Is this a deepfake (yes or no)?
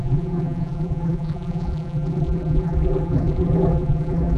yes